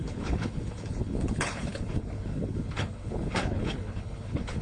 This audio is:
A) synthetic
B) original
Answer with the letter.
A